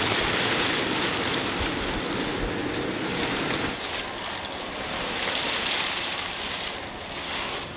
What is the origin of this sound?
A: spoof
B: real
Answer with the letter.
B